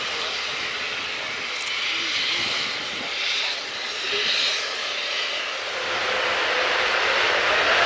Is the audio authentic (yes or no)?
yes